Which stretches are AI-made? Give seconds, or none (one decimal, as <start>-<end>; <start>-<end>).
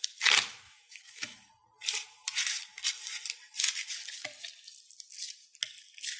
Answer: 0.5-1.5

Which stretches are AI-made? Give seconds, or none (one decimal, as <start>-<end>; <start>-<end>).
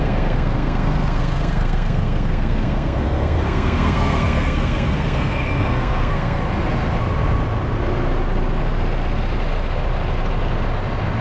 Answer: 0.0-6.4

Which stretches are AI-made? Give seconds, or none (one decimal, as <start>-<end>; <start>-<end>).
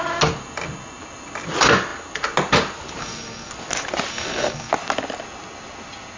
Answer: 3.0-3.5; 4.1-4.7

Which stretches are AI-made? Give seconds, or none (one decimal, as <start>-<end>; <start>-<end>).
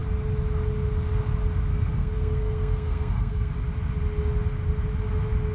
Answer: 1.7-3.5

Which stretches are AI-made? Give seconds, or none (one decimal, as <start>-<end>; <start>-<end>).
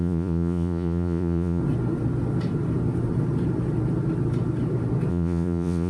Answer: 0.0-1.6; 5.1-5.9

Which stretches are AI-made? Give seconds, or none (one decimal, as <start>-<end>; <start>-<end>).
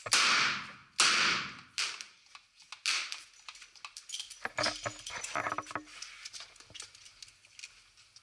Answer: none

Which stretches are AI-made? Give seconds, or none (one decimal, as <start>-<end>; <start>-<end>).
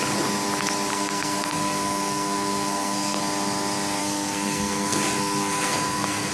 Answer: 0.9-3.2; 4.0-6.3